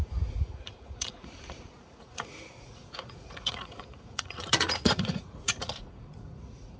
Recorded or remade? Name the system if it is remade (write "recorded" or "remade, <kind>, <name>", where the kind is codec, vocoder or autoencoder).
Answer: remade, vocoder, Vocos